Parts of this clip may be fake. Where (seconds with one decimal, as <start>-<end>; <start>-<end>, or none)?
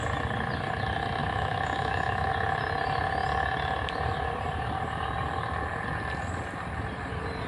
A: 1.2-2.3